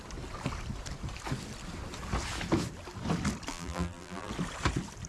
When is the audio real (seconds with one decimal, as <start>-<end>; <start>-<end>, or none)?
0.0-3.5; 4.3-5.1